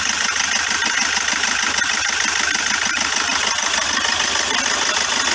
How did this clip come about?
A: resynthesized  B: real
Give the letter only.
B